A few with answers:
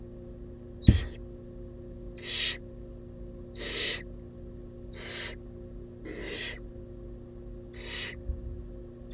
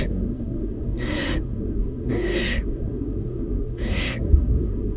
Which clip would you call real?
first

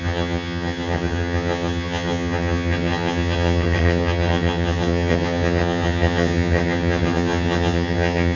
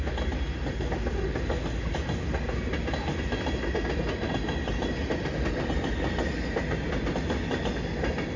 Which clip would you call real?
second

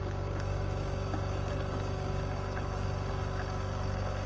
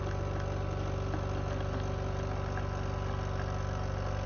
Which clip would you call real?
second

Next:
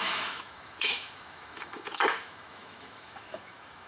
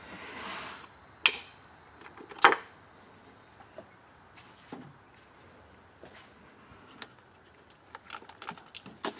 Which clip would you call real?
second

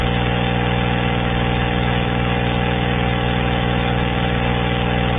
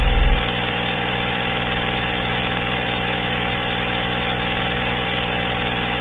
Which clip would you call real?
first